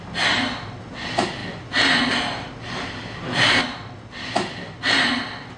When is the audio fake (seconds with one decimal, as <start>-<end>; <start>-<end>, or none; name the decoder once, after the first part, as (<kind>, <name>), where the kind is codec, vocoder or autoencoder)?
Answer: none